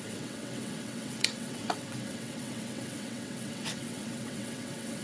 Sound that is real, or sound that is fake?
fake